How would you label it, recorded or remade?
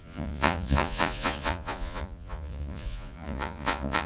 remade